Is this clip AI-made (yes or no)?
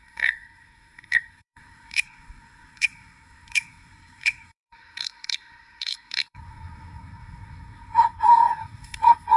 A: yes